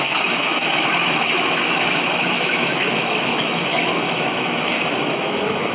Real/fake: fake